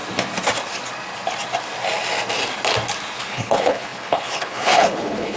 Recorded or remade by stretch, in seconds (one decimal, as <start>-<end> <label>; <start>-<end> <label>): 0.0-3.2 recorded; 3.2-5.4 remade